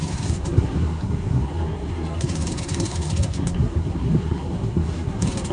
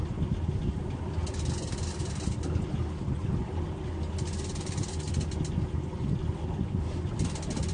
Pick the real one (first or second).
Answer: second